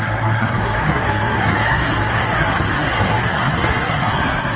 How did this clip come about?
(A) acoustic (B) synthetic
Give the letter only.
B